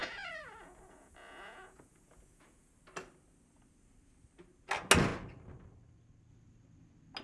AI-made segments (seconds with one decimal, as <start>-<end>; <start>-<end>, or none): 0.0-2.7